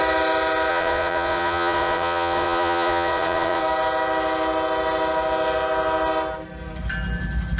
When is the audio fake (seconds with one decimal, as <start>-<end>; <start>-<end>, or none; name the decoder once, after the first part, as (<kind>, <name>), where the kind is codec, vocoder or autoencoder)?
0.7-3.6 (vocoder, Vocos)